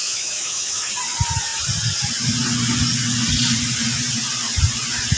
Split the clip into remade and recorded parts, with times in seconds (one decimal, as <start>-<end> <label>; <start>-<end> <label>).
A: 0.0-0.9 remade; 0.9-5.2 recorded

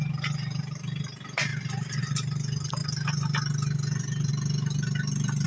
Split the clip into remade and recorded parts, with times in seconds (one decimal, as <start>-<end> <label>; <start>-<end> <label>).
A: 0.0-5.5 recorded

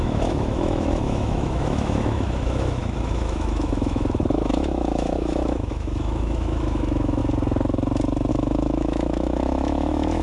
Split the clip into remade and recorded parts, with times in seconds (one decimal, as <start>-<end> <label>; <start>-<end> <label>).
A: 0.0-7.2 remade; 7.2-8.3 recorded; 8.3-10.2 remade

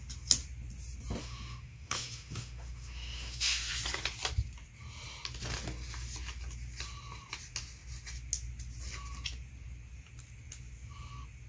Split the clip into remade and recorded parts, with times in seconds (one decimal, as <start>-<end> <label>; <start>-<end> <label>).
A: 0.0-1.2 recorded; 1.2-3.7 remade; 3.7-11.5 recorded